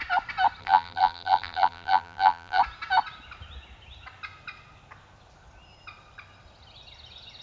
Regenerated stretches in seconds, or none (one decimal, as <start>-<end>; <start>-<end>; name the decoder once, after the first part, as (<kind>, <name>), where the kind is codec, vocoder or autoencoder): 0.6-2.6 (vocoder, BigVGAN v2)